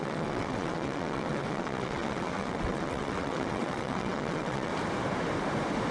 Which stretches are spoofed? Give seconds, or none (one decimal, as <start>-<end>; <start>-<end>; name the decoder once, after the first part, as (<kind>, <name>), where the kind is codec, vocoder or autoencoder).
0.0-4.7 (vocoder, WaveNeXt)